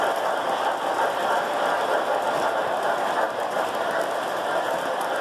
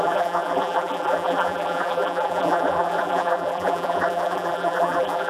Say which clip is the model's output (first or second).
second